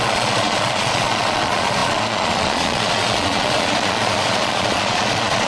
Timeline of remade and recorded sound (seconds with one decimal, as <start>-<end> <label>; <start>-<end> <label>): 0.0-5.5 remade